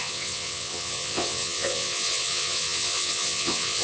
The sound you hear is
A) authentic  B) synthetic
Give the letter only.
B